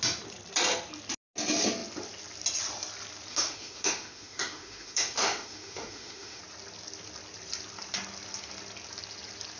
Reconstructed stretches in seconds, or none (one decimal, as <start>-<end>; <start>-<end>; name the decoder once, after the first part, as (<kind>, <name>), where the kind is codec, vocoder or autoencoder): 3.3-6.4 (autoencoder, DAC-VAE)